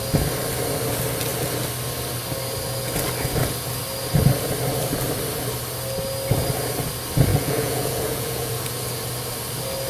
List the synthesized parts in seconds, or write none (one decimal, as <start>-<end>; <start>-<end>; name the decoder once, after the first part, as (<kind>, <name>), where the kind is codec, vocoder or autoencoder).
7.3-8.5 (vocoder, Vocos)